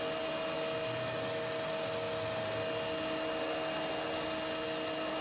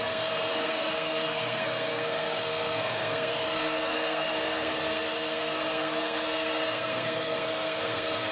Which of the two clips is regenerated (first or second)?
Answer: second